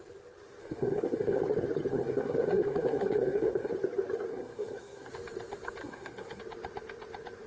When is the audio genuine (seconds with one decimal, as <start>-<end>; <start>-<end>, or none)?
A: 0.0-0.6; 1.4-1.9; 3.7-4.3; 5.1-5.8; 6.4-7.5